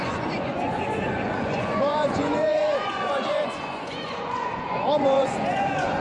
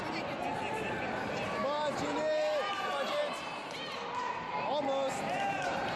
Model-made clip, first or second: first